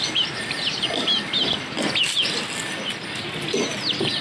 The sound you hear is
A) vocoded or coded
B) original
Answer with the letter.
B